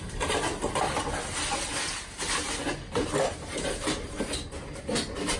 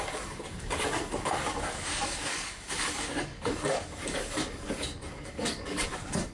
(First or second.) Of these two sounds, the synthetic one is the second